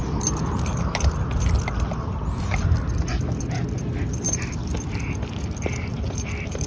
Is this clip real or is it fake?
real